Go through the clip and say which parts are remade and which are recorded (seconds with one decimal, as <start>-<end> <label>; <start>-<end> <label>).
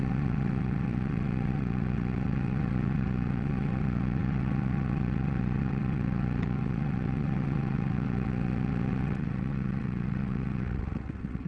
0.0-11.5 remade